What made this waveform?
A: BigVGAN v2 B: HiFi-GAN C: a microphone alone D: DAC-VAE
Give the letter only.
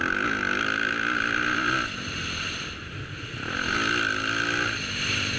C